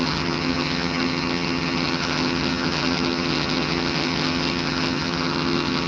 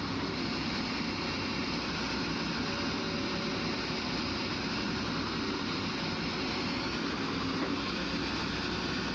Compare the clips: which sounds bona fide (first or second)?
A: second